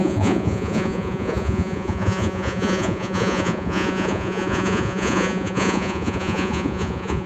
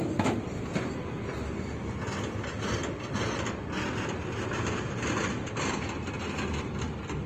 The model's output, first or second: first